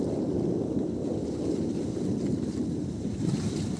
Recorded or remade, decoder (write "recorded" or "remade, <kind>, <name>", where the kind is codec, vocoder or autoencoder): remade, vocoder, BigVGAN v2